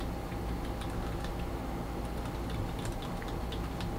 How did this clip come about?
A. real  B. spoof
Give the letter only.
A